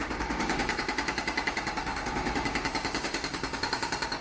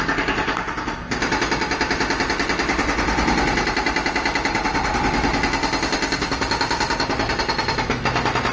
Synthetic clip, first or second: first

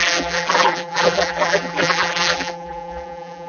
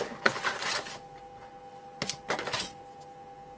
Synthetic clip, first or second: first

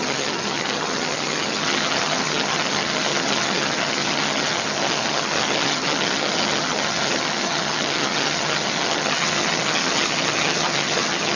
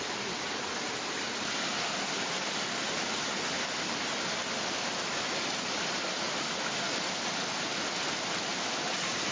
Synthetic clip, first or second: first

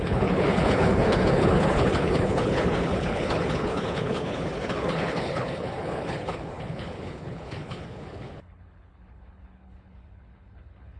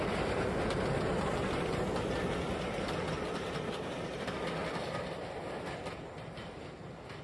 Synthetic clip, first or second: first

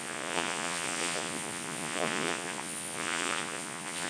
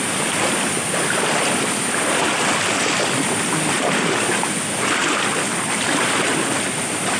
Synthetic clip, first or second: first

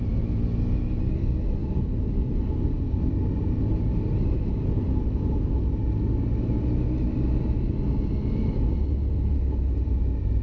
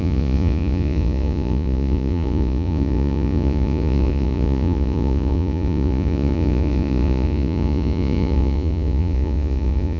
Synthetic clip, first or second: second